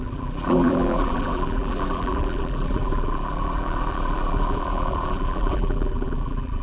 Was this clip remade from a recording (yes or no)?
yes